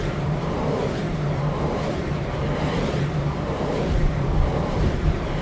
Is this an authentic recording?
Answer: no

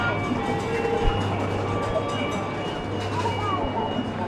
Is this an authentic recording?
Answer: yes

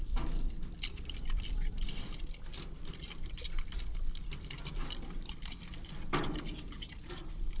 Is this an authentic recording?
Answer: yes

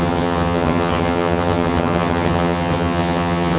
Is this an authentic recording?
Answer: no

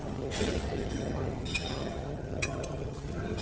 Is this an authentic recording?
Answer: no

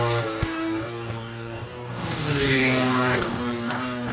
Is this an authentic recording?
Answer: no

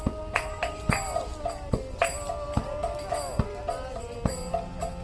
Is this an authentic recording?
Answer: yes